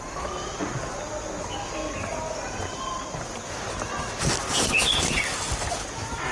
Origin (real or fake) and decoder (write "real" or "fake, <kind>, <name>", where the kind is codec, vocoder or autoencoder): real